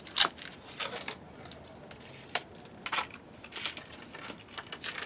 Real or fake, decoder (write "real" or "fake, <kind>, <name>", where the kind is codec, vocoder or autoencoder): real